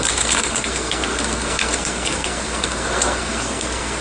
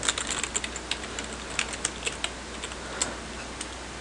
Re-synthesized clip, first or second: first